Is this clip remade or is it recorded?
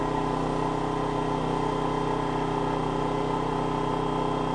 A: recorded